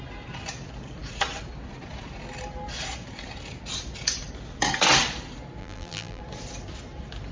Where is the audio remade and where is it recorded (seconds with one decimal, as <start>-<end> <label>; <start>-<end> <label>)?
0.0-5.6 recorded; 5.6-6.2 remade; 6.2-7.3 recorded